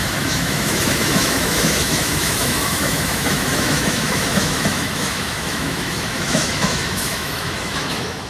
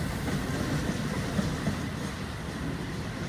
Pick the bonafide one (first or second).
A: second